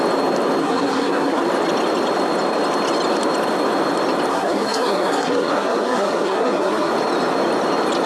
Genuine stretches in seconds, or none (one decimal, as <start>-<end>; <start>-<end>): 0.0-0.6; 1.4-4.3; 6.9-8.1